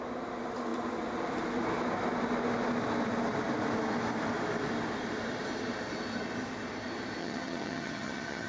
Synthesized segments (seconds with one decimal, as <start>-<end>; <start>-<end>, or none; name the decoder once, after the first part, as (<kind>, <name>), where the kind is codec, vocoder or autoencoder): 7.2-8.5 (vocoder, HiFi-GAN)